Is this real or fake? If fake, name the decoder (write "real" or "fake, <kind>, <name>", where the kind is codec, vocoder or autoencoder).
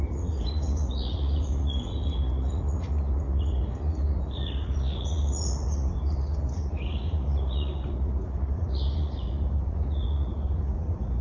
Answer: fake, vocoder, Vocos